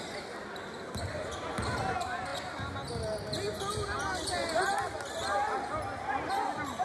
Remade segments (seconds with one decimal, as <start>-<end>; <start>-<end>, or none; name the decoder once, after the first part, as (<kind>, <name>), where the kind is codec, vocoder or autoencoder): none